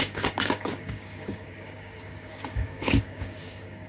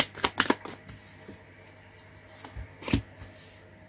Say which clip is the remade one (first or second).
first